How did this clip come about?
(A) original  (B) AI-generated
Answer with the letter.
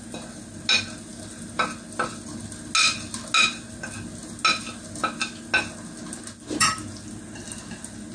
A